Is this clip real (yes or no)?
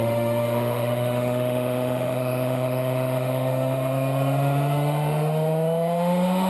no